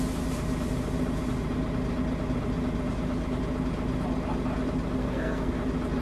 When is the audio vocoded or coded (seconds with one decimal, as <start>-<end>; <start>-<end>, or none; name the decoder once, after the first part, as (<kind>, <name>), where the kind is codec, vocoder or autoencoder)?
5.0-5.5 (codec, SNAC)